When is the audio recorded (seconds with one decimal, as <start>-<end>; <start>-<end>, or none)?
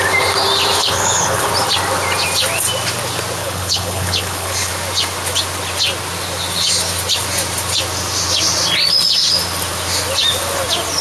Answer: 0.0-0.8; 1.5-3.4; 4.7-11.0